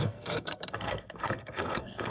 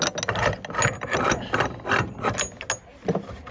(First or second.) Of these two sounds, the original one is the second